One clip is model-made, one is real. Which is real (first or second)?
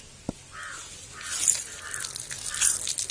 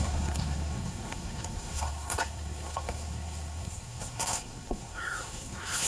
first